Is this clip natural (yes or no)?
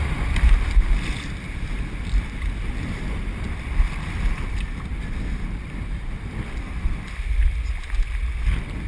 yes